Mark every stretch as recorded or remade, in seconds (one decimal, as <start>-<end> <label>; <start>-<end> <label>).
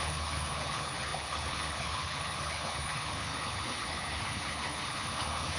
0.0-5.6 remade